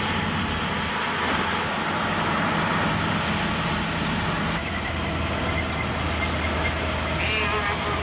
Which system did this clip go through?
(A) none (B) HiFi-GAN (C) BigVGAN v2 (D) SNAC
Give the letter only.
A